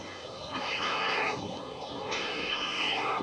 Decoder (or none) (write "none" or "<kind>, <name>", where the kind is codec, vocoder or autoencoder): codec, SNAC